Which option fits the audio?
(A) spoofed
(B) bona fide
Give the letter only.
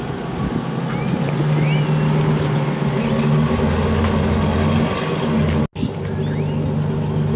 B